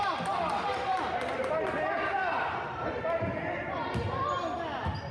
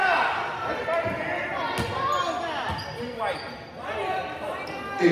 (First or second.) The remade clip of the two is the first